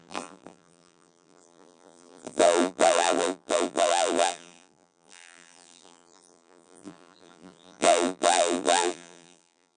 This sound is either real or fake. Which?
fake